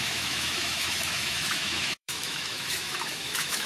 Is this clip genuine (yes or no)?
no